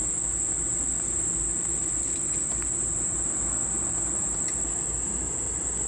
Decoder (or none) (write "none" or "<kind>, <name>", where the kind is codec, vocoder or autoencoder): none